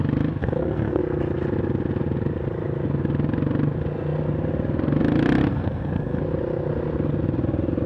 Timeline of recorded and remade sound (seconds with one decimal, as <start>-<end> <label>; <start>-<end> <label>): 0.0-0.4 recorded; 0.4-1.0 remade; 1.0-5.5 recorded; 5.5-6.2 remade; 6.2-7.9 recorded

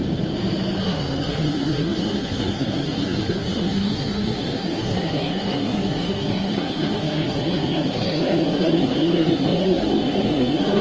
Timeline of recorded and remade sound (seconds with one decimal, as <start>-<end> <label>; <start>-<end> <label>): 0.0-0.8 recorded; 0.8-10.8 remade